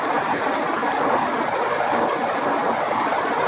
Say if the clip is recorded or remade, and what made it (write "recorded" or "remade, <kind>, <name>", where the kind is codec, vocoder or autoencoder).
recorded